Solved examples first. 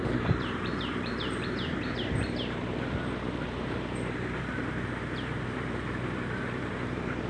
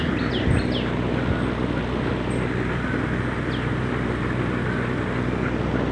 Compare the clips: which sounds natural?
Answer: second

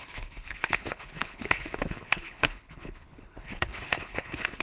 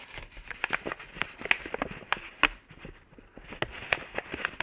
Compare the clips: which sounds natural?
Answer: second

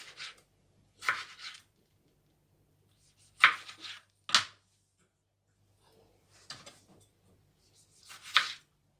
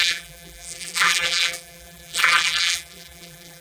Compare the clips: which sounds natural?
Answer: first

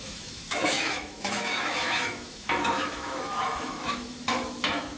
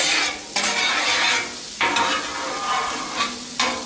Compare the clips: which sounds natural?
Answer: second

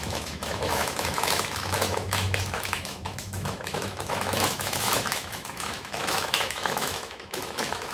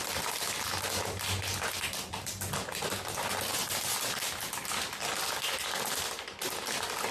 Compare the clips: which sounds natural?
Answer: second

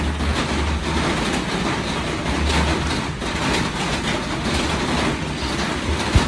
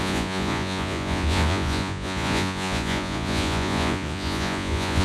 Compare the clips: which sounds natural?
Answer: first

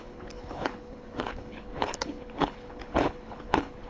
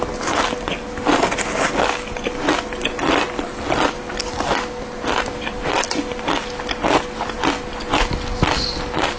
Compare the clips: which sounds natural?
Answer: second